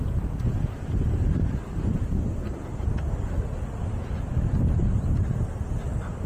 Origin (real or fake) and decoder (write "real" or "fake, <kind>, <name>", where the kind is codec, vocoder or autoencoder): real